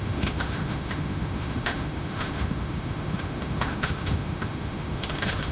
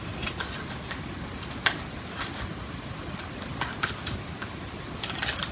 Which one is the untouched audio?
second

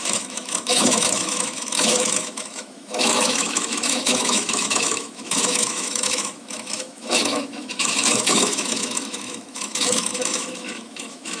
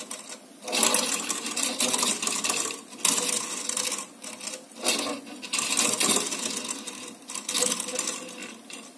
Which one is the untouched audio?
second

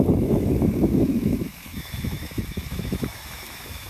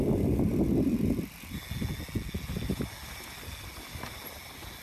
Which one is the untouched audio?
second